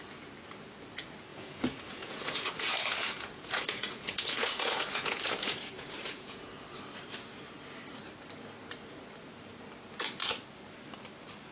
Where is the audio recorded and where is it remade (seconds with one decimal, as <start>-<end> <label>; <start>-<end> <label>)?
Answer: 0.0-1.3 recorded; 1.3-6.5 remade; 6.5-11.5 recorded